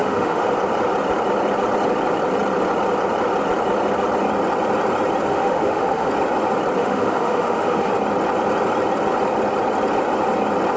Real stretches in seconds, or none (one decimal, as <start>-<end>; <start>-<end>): 0.5-5.3; 6.1-6.8; 7.9-10.8

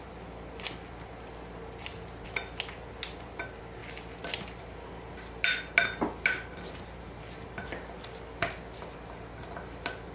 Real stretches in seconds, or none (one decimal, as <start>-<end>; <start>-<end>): 0.0-10.1

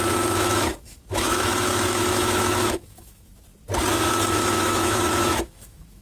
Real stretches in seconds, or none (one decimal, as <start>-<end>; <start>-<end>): 3.3-3.9

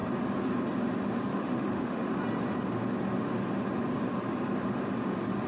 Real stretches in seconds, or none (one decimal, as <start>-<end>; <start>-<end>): 0.0-1.3; 2.2-5.5

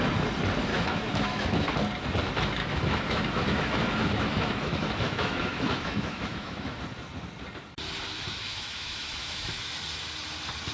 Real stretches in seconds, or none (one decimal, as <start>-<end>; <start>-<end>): 0.0-0.7; 1.7-2.6; 6.8-8.4; 9.5-10.7

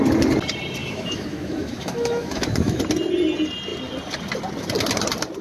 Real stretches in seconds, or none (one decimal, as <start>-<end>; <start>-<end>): 0.0-0.8; 2.8-5.4